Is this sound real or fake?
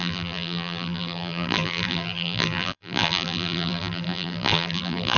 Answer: fake